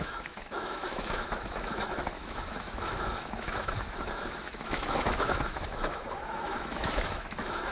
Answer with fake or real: fake